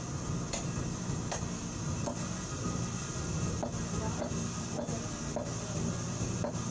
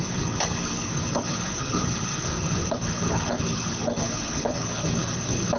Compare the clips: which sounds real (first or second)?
first